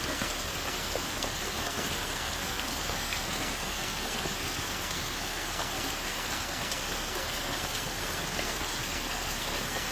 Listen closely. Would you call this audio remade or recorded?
remade